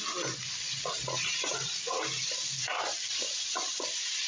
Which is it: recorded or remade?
recorded